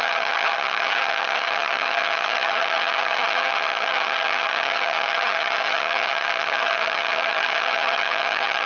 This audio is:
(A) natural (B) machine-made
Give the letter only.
B